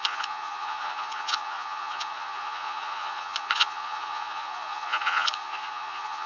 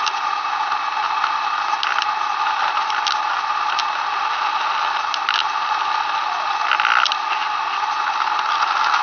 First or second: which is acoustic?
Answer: second